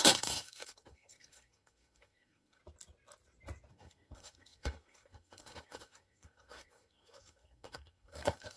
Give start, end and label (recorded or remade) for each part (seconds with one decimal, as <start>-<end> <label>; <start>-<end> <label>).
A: 0.0-2.6 remade; 2.6-3.7 recorded; 3.7-8.6 remade